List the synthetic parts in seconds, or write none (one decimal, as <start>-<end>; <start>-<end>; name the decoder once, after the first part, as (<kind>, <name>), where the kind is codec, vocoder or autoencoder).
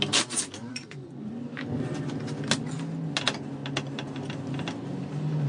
0.6-1.3 (vocoder, Vocos)